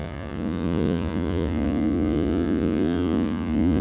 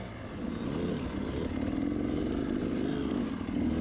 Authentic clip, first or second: second